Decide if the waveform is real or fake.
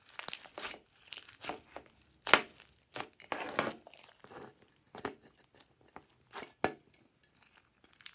real